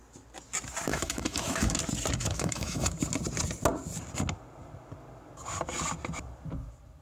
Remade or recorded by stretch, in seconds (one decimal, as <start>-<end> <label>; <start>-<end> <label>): 0.0-0.9 recorded; 0.9-1.8 remade; 1.8-2.2 recorded; 2.2-2.9 remade; 2.9-7.0 recorded